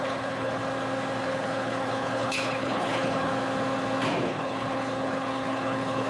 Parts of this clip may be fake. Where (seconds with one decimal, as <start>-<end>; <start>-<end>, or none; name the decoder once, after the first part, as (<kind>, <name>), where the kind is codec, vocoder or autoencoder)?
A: 0.0-0.6 (codec, HILCodec); 1.2-3.3; 4.2-6.1